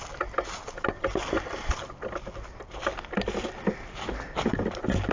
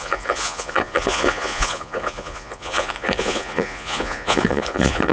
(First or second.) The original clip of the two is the first